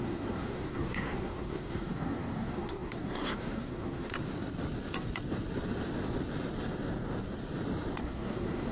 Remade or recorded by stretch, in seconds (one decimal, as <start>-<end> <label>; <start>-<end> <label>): 0.0-4.1 remade; 4.1-8.0 recorded; 8.0-8.7 remade